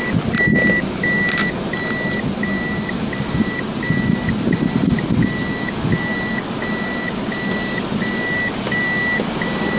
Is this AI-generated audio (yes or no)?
no